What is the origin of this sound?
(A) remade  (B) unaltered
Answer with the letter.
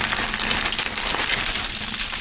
B